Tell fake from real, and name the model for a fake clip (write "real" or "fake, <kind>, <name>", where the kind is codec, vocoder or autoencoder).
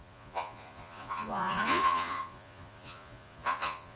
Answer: fake, vocoder, Vocos